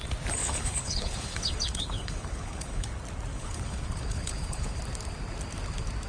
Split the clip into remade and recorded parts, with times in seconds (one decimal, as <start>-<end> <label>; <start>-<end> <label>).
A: 0.0-0.4 recorded; 0.4-2.9 remade; 2.9-3.3 recorded; 3.3-4.8 remade; 4.8-6.1 recorded